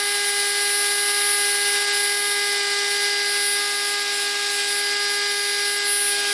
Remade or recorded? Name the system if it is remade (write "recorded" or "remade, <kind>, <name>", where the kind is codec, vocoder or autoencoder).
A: recorded